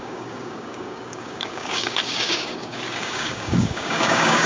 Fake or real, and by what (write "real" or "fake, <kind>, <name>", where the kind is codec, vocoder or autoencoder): fake, codec, DAC